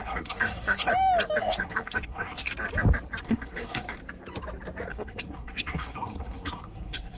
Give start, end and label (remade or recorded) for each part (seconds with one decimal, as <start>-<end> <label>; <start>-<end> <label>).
0.0-0.9 remade; 0.9-1.4 recorded; 1.4-2.5 remade; 2.5-3.2 recorded; 3.2-4.0 remade; 4.0-4.9 recorded; 4.9-7.2 remade